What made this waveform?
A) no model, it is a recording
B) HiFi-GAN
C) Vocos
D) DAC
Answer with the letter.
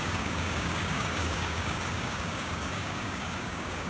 D